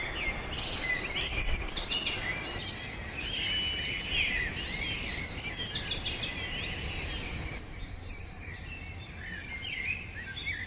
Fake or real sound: real